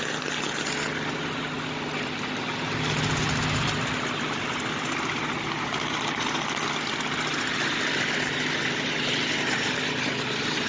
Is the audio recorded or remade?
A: recorded